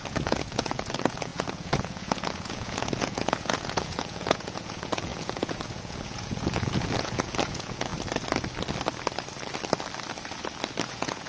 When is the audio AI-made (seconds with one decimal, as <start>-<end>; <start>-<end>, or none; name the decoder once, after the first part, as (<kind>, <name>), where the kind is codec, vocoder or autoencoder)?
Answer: 0.0-7.9 (vocoder, Vocos); 10.9-11.3